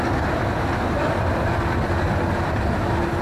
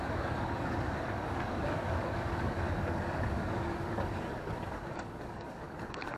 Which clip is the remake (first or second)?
second